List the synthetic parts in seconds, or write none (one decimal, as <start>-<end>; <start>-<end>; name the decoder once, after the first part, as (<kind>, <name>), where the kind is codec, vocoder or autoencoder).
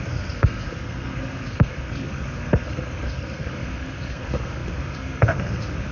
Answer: 0.0-5.9 (codec, SNAC)